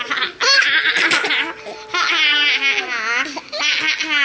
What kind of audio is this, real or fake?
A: real